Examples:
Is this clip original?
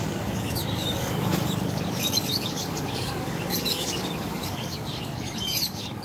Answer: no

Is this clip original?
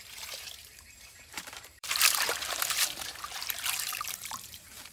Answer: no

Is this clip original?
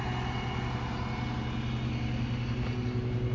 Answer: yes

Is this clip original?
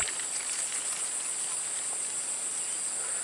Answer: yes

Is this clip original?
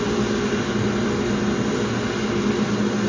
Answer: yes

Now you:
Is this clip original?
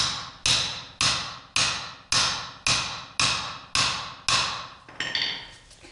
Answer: yes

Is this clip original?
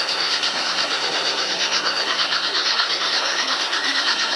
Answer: no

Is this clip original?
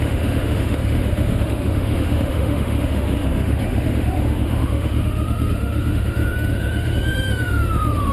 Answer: no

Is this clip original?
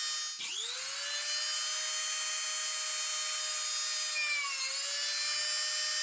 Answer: yes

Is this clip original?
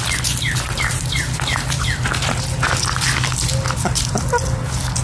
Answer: yes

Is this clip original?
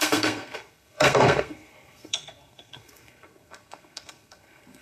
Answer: no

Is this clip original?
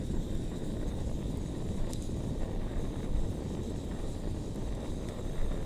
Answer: yes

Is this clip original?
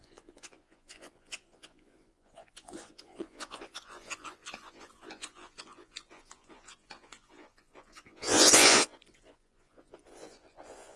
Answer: no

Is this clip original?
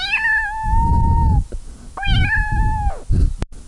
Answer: yes